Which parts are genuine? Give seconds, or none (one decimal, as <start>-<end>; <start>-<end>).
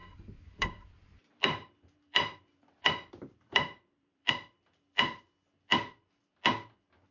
4.3-7.1